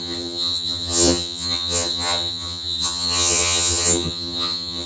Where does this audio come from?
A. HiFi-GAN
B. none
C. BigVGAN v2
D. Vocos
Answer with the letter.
A